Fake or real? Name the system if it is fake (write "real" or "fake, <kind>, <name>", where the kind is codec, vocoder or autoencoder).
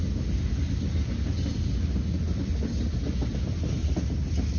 real